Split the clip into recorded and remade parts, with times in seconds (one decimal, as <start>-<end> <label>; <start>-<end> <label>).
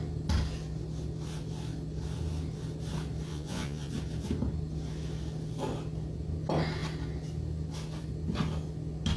0.0-3.3 recorded; 3.3-3.9 remade; 3.9-9.2 recorded